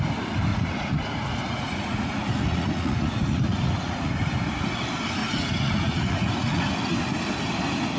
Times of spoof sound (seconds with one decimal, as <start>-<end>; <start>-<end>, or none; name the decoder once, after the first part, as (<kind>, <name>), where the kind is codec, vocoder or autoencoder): 0.5-4.1 (vocoder, Vocos); 5.2-6.6